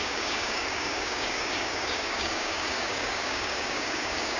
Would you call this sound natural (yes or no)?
no